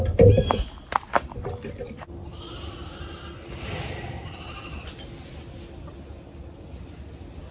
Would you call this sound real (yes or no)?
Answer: yes